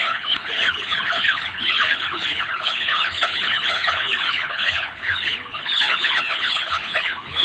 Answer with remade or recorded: remade